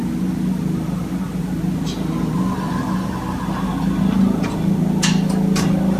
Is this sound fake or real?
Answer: real